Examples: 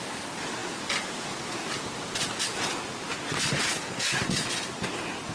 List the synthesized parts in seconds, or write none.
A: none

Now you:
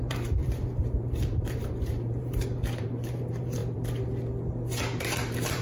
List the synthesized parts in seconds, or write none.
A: 0.0-3.6; 5.0-5.6

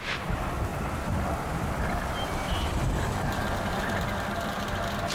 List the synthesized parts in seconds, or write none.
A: 0.7-1.8

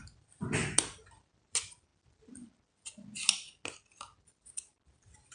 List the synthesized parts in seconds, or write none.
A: 0.0-0.6; 1.3-1.9; 4.2-5.3

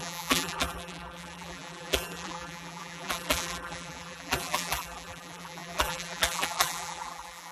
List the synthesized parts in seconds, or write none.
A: 0.0-7.5

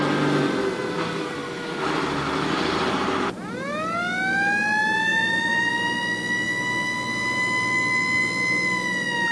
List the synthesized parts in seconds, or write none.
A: 1.4-2.9; 5.1-5.7

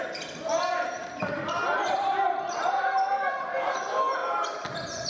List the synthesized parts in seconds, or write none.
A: 0.7-3.8; 4.2-5.1

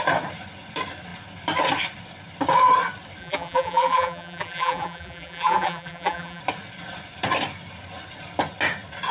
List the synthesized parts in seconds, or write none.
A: 3.2-6.4